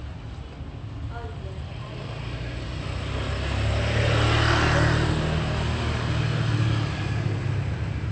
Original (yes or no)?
yes